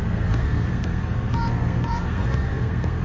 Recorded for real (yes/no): no